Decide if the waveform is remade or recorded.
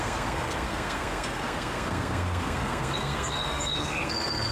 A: remade